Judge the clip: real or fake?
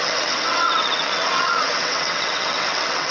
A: fake